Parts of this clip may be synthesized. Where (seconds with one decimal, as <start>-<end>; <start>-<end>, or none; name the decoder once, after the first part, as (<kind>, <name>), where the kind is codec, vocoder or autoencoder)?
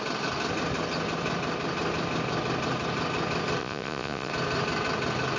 3.6-4.3 (vocoder, Vocos)